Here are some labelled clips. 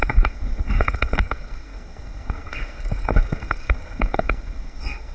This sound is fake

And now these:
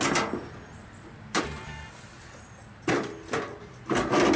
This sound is real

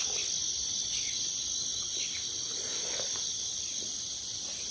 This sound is real